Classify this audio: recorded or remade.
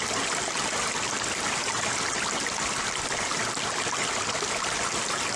recorded